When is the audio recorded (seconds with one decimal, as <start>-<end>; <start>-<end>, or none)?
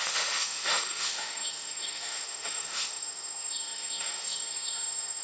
none